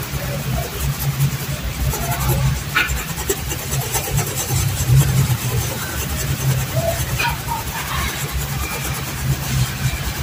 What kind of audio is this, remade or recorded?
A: remade